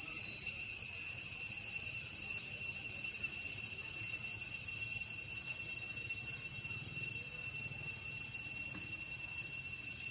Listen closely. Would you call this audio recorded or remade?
remade